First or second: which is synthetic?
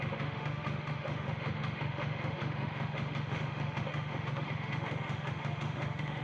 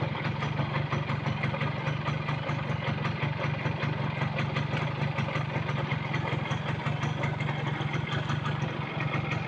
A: first